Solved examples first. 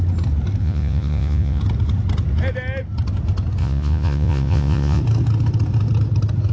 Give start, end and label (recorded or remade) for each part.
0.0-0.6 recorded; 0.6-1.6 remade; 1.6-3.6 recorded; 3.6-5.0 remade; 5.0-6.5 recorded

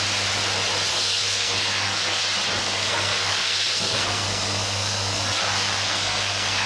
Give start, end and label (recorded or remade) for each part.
0.0-0.9 recorded; 0.9-2.2 remade; 2.2-2.6 recorded; 2.6-6.7 remade

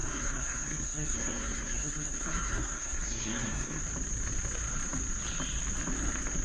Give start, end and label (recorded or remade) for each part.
0.0-3.8 remade; 3.8-6.4 recorded